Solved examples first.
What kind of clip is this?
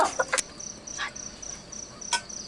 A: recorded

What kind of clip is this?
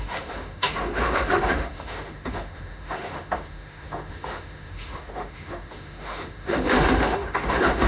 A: remade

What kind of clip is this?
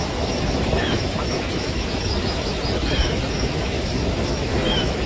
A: remade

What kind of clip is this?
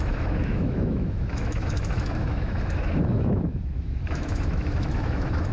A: remade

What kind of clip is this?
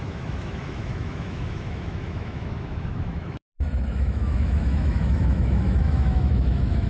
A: remade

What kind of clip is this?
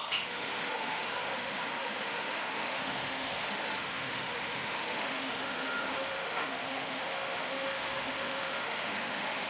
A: remade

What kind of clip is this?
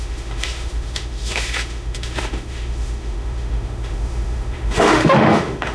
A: remade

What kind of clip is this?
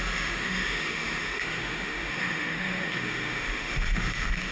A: remade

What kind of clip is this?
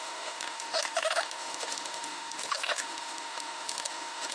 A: remade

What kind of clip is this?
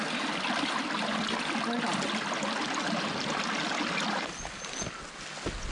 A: recorded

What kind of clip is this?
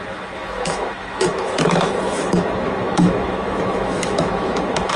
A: remade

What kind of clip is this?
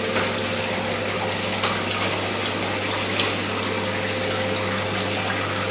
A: recorded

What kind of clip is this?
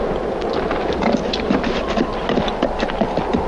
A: recorded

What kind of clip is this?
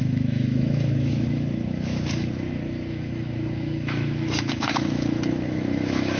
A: remade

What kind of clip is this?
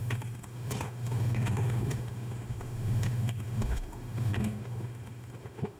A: remade